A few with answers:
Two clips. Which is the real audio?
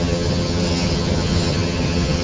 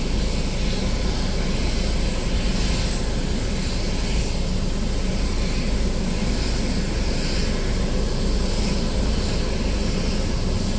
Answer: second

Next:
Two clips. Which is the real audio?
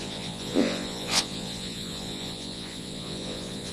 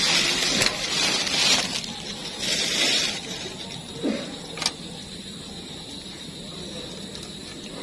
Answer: second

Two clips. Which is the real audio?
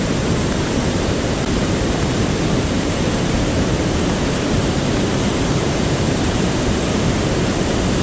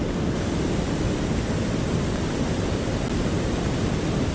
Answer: second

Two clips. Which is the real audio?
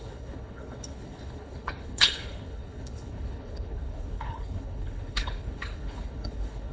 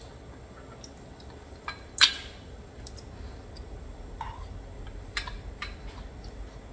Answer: second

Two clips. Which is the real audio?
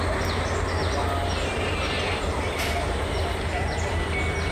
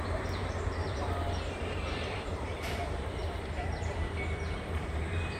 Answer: first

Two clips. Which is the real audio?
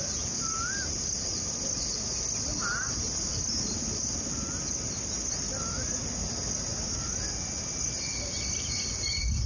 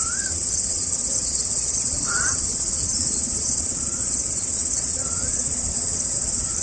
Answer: first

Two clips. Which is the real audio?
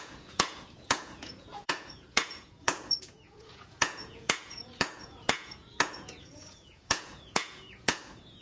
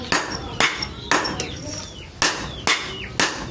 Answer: second